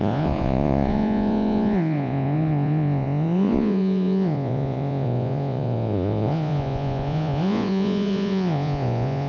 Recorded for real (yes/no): no